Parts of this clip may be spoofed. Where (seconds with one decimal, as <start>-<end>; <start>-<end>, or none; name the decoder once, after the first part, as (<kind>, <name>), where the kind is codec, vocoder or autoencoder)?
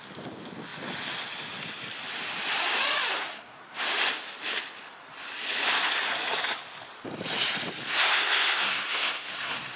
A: 3.1-3.8 (codec, SNAC); 7.8-9.8